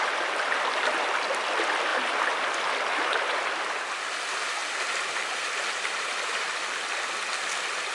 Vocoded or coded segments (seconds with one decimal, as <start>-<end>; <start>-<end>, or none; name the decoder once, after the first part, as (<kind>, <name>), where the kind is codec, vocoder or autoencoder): none